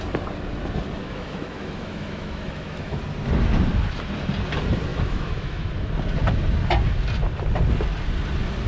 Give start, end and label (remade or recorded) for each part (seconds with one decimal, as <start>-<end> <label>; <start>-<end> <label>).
0.0-1.0 recorded; 1.0-3.0 remade; 3.0-4.9 recorded; 4.9-5.7 remade; 5.7-8.7 recorded